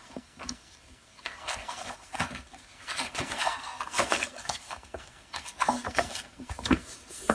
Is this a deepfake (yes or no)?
yes